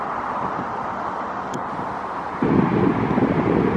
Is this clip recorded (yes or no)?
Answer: yes